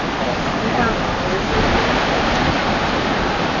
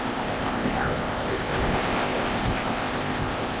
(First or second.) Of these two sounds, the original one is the first